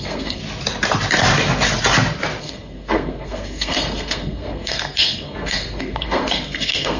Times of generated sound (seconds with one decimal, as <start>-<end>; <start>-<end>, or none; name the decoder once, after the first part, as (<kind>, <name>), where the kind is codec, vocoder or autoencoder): 0.0-0.4 (codec, SNAC); 2.4-7.0